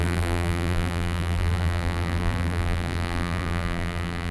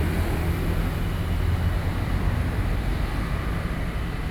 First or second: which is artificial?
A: first